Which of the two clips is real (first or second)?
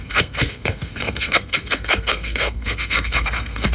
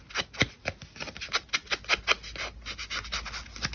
second